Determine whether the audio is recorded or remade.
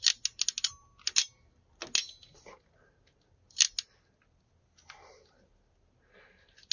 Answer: recorded